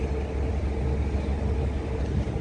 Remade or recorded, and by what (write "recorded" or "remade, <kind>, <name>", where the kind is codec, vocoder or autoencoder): recorded